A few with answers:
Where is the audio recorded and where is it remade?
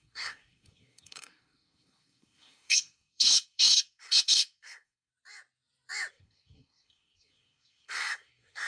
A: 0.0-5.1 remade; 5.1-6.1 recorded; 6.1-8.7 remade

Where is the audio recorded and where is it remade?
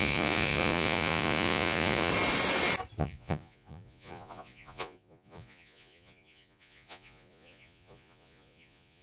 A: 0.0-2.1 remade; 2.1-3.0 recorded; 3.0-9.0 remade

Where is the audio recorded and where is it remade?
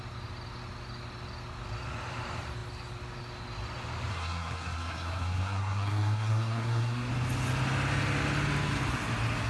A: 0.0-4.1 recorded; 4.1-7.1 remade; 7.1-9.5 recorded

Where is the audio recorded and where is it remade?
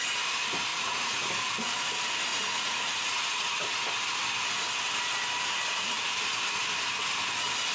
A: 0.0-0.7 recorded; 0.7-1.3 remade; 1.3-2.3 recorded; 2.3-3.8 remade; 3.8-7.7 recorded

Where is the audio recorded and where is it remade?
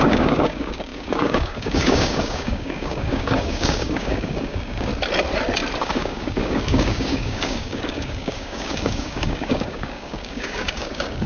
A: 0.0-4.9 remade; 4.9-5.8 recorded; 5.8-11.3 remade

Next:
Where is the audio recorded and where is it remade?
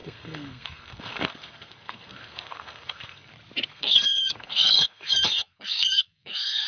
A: 0.0-3.3 remade; 3.3-3.7 recorded; 3.7-6.7 remade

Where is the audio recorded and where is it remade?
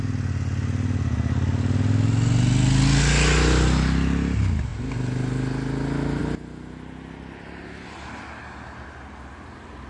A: 0.0-9.9 recorded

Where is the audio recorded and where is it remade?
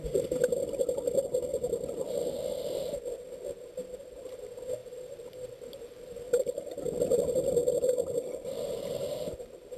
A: 0.0-4.8 recorded; 4.8-5.7 remade; 5.7-9.8 recorded